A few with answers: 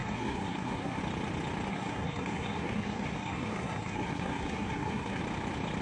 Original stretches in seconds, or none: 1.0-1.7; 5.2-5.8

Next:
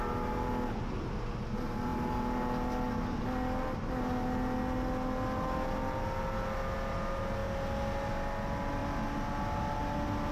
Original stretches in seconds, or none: 0.0-10.3

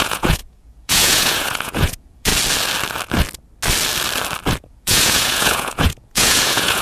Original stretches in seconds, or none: 2.3-4.6

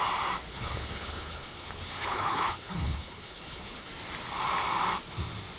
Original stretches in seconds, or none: 0.0-0.5; 3.9-5.6

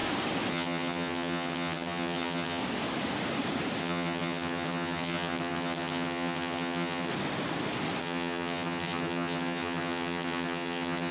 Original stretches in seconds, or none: 0.0-0.5; 2.6-3.8; 7.1-8.0

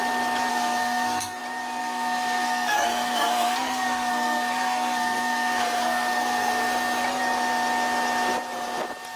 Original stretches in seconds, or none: 0.0-0.5; 1.4-1.8; 6.5-9.2